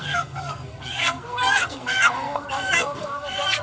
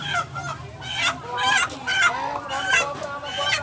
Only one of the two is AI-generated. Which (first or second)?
first